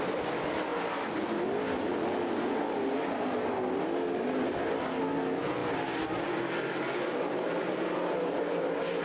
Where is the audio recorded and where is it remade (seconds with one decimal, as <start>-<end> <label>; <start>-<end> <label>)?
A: 0.0-9.0 recorded